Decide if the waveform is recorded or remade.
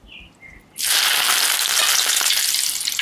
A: recorded